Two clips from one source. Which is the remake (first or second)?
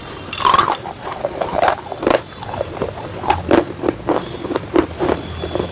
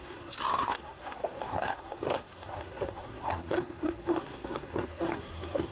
second